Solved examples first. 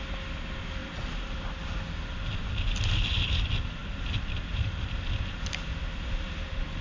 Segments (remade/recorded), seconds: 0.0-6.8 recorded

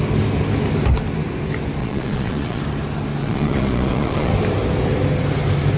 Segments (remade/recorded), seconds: 0.0-1.8 recorded; 1.8-2.6 remade; 2.6-3.2 recorded; 3.2-4.3 remade; 4.3-5.8 recorded

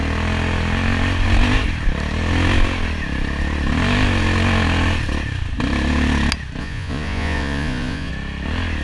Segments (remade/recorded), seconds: 0.0-6.6 recorded; 6.6-8.1 remade; 8.1-8.8 recorded

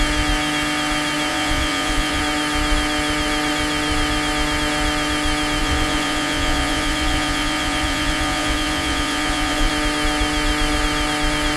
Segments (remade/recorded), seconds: 0.0-1.3 recorded; 1.3-2.2 remade; 2.2-5.6 recorded; 5.6-9.7 remade; 9.7-11.6 recorded

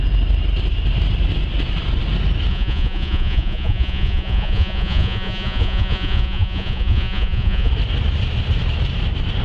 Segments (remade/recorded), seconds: 0.0-2.5 recorded; 2.5-7.7 remade; 7.7-9.4 recorded

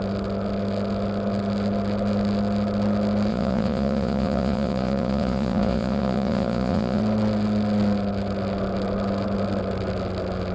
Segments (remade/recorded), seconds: 0.0-3.3 recorded; 3.3-7.0 remade; 7.0-10.5 recorded

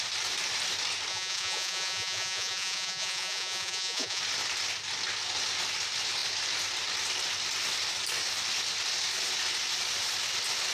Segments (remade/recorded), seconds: 0.0-1.1 recorded; 1.1-4.2 remade; 4.2-10.7 recorded